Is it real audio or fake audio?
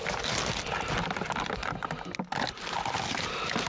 real